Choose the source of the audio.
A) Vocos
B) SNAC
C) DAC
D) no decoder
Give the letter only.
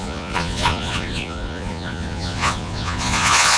A